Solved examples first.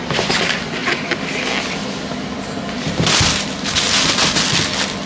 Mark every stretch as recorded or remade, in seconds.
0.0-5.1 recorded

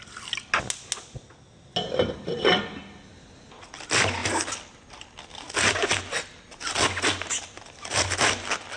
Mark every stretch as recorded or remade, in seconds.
0.0-8.8 recorded

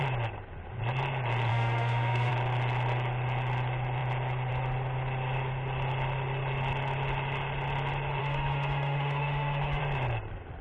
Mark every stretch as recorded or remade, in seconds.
0.0-1.5 recorded; 1.5-2.3 remade; 2.3-8.2 recorded; 8.2-9.8 remade; 9.8-10.6 recorded

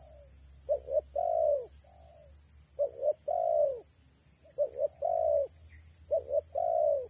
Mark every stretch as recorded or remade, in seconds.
0.0-7.1 recorded

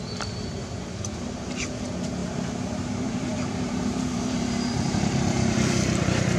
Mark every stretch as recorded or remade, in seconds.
0.0-2.2 recorded; 2.2-6.0 remade; 6.0-6.4 recorded